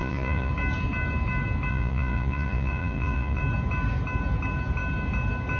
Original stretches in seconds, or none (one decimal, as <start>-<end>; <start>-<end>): 0.5-1.7; 3.4-5.6